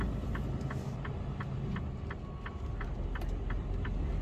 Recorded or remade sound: recorded